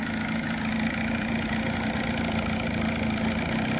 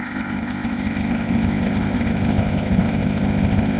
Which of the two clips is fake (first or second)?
second